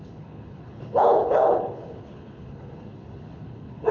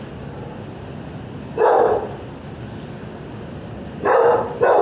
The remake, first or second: first